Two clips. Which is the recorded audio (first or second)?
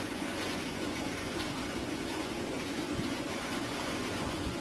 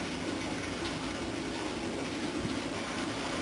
second